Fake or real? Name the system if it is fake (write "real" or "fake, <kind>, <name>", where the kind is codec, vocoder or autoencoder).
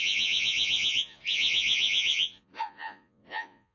fake, vocoder, Vocos